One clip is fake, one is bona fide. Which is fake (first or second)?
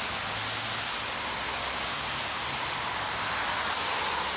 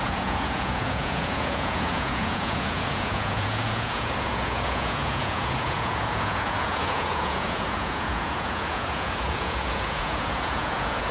second